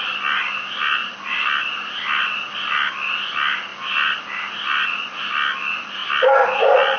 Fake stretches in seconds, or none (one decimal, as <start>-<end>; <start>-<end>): none